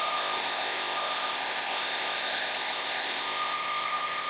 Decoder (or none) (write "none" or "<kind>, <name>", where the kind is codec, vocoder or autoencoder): codec, ZipCodec